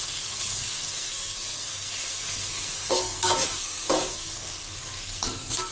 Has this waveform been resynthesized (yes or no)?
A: yes